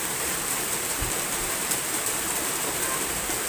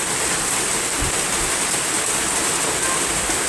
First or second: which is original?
second